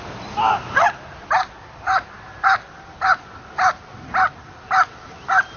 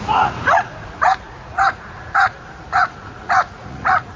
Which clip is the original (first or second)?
first